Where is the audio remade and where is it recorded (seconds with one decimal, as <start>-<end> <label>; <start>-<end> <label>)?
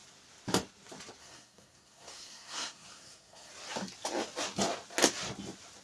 0.0-1.2 recorded; 1.2-3.5 remade; 3.5-5.8 recorded